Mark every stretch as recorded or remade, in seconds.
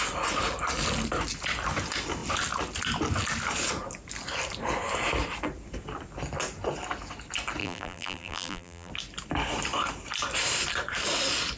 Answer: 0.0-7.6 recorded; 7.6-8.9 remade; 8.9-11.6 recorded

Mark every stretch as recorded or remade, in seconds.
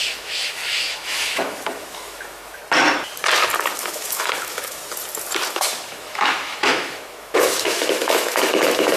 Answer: 0.0-2.6 remade; 2.6-3.8 recorded; 3.8-4.8 remade; 4.8-5.5 recorded; 5.5-9.0 remade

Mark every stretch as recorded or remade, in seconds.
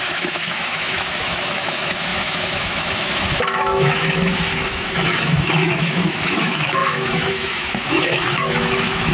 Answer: 0.0-9.1 remade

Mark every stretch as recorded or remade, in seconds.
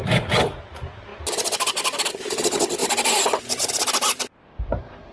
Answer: 0.0-2.8 recorded; 2.8-3.7 remade; 3.7-5.1 recorded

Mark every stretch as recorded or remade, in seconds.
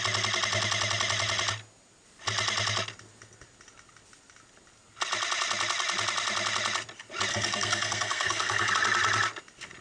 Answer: 0.0-7.3 recorded; 7.3-8.7 remade; 8.7-9.8 recorded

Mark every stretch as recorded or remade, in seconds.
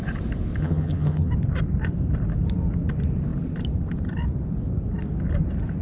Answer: 0.0-0.6 recorded; 0.6-1.3 remade; 1.3-5.8 recorded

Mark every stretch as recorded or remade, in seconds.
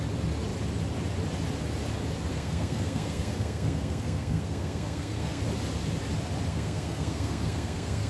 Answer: 0.0-2.3 recorded; 2.3-5.4 remade; 5.4-6.5 recorded; 6.5-8.1 remade